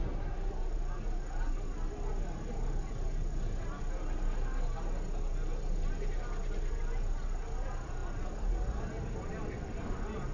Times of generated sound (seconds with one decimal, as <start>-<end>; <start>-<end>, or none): none